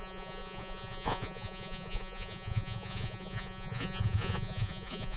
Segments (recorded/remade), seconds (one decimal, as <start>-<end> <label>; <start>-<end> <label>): 0.0-5.2 remade